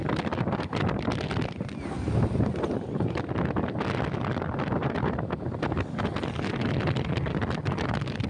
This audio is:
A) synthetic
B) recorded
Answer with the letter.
B